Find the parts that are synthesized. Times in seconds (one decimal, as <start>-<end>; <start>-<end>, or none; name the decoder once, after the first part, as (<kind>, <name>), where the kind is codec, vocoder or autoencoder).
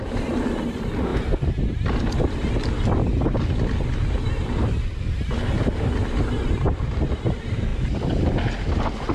none